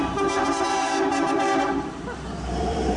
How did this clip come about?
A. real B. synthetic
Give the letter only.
B